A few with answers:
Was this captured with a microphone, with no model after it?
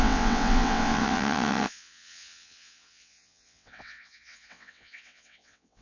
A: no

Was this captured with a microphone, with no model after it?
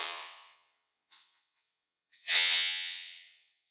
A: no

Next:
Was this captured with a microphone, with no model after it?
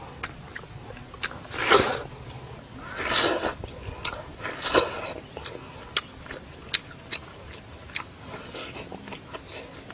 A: yes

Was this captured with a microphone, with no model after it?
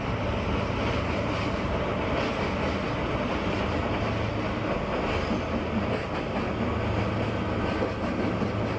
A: yes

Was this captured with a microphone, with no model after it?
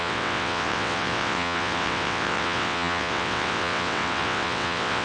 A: no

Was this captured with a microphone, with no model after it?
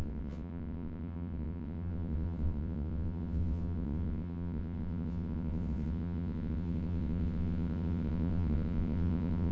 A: no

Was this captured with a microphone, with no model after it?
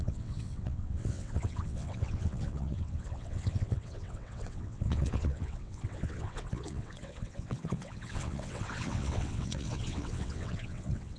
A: no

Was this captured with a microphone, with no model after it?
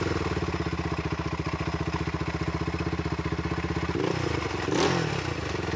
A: yes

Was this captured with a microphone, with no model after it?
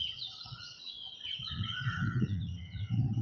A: no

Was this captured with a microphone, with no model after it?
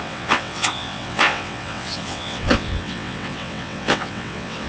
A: no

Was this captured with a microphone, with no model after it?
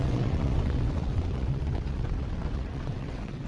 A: no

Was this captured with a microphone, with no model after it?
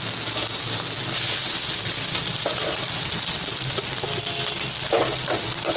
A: yes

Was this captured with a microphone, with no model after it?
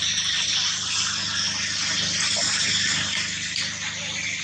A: yes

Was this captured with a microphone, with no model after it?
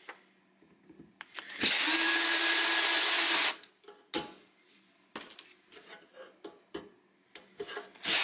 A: yes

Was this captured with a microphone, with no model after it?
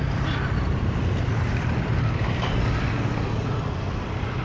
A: yes